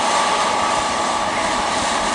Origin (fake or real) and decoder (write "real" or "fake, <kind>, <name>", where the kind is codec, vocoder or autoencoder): real